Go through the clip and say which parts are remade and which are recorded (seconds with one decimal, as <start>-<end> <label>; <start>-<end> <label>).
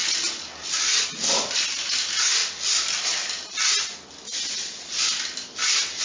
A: 0.0-6.0 recorded